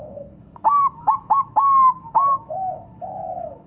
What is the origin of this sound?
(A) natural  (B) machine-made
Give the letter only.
B